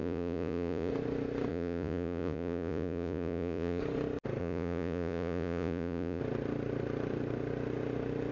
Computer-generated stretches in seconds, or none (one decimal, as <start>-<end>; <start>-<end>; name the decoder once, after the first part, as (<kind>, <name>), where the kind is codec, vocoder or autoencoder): 0.0-0.9 (vocoder, Vocos); 1.5-3.8; 4.4-6.2